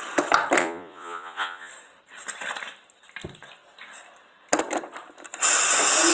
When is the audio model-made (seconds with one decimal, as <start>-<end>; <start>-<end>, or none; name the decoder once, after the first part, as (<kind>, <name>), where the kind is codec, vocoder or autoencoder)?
0.6-1.7 (vocoder, Vocos)